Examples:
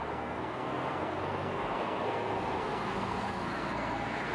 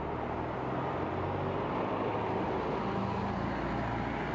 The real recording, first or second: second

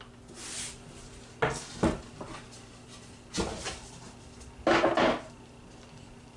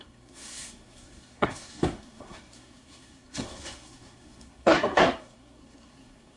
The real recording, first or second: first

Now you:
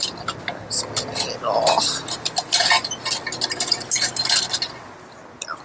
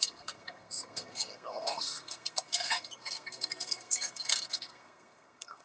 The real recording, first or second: first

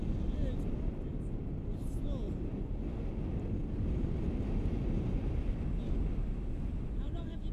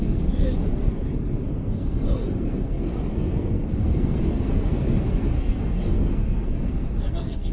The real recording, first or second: first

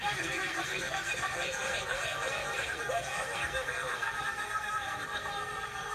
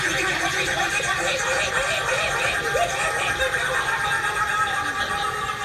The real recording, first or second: second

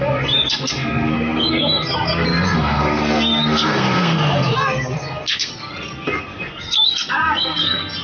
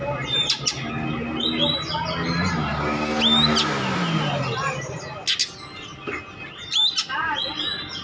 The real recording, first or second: second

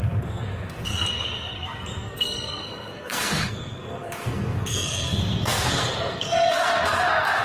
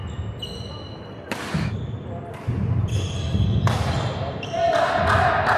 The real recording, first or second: second